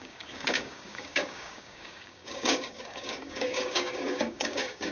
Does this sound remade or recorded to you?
remade